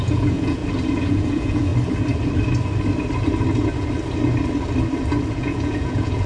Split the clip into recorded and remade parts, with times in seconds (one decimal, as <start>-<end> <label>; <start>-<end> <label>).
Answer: 0.0-0.6 remade; 0.6-1.1 recorded; 1.1-1.7 remade; 1.7-5.3 recorded; 5.3-6.3 remade